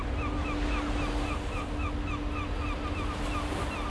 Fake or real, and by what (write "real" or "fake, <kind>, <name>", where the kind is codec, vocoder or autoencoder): real